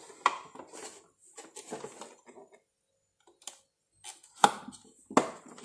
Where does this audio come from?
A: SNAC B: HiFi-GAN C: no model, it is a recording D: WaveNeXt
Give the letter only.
C